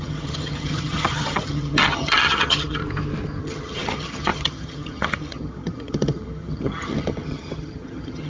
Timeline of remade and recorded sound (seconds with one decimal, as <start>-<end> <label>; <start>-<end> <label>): 0.0-2.8 remade; 2.8-3.4 recorded; 3.4-8.3 remade